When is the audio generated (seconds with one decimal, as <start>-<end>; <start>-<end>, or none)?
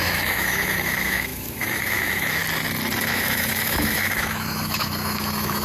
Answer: 0.0-2.4; 3.0-5.6